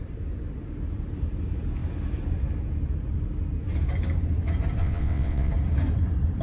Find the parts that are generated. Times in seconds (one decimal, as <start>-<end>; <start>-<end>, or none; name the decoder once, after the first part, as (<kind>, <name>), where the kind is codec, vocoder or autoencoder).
4.8-5.5 (vocoder, WaveNeXt)